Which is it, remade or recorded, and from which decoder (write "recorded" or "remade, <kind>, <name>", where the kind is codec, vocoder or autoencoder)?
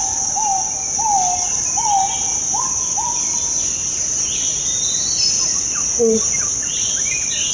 recorded